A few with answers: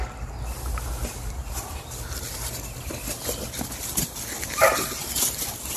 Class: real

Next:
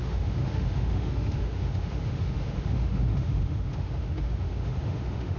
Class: fake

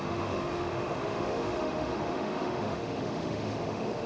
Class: fake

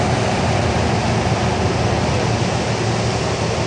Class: real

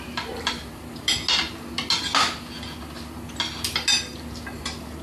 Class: real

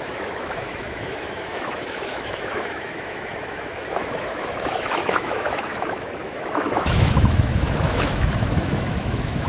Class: fake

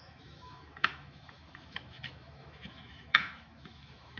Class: fake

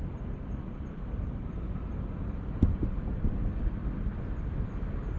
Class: real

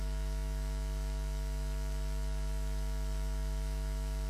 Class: fake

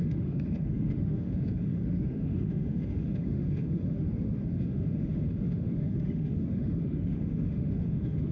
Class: fake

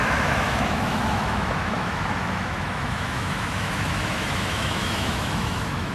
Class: fake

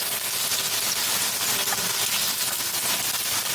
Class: real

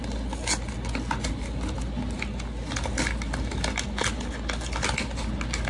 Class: real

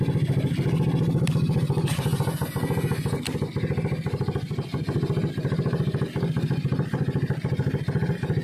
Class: real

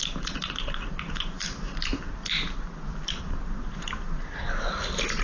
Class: real